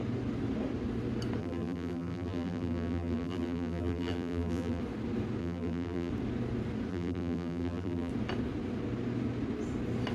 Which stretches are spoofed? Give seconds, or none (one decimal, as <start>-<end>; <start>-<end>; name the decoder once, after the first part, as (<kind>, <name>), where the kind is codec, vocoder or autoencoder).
1.4-4.8 (vocoder, BigVGAN v2); 5.4-6.1; 6.9-8.1